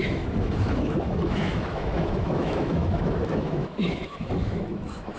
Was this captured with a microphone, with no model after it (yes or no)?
no